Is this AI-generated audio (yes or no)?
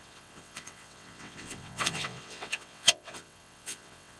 yes